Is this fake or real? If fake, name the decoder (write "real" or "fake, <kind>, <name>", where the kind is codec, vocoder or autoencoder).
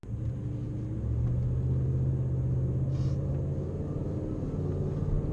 real